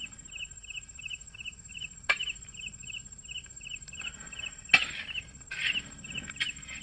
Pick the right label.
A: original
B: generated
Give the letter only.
A